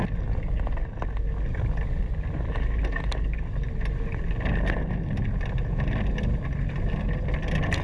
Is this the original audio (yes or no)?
yes